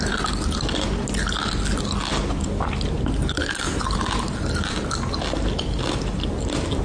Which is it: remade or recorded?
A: recorded